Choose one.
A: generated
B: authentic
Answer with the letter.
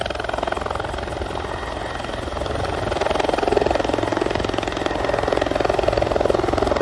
B